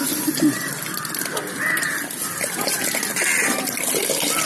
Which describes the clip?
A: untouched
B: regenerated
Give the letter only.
A